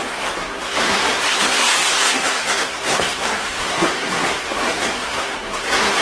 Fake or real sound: fake